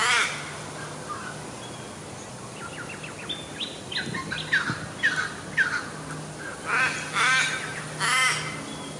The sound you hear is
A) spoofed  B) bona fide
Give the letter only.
B